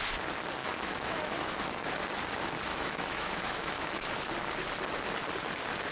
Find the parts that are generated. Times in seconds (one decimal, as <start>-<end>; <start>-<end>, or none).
0.6-1.6; 2.7-4.2